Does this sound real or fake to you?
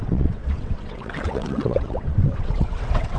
fake